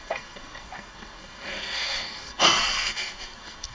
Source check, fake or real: fake